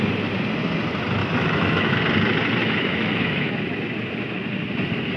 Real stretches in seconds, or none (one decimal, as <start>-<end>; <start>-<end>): 0.0-1.2; 2.0-2.6; 3.7-5.2